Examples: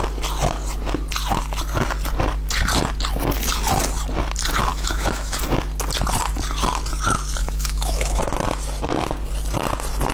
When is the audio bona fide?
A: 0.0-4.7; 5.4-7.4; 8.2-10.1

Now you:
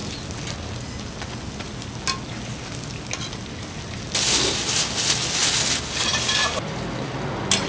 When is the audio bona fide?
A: 0.0-7.7

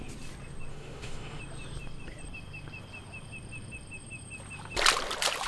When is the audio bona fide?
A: 0.0-0.7; 1.4-5.5